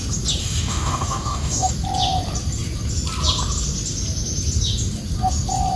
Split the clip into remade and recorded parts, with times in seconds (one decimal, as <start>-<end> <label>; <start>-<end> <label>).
0.0-0.4 recorded; 0.4-1.7 remade; 1.7-5.8 recorded